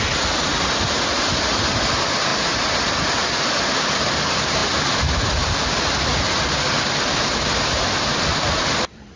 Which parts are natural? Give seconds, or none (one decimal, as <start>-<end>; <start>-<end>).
0.0-9.2